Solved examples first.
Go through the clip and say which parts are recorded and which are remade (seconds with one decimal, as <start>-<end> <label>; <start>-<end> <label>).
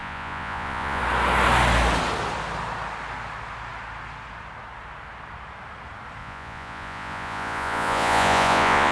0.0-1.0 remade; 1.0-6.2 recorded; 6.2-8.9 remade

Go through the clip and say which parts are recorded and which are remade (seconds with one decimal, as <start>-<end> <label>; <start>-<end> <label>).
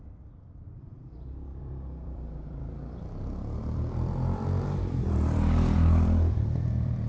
0.0-7.1 remade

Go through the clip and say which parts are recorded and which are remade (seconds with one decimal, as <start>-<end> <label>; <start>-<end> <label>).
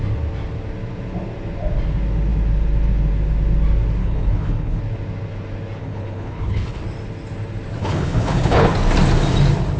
0.0-4.0 recorded; 4.0-4.8 remade; 4.8-5.8 recorded; 5.8-6.8 remade; 6.8-7.8 recorded; 7.8-8.7 remade; 8.7-9.8 recorded